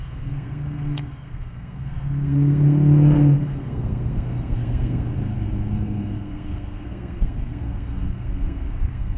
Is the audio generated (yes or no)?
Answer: yes